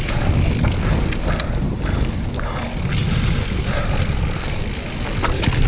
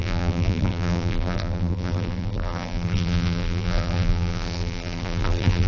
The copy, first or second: second